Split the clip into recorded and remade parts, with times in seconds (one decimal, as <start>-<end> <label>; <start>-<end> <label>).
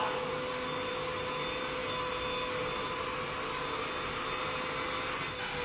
0.0-5.6 recorded